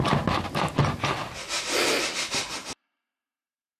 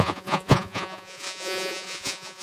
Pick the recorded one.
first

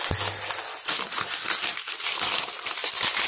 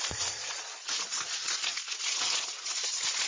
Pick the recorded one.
first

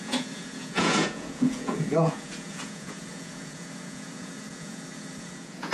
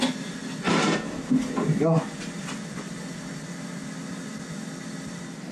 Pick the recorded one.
second